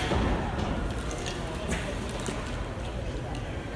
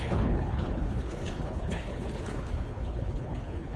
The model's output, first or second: second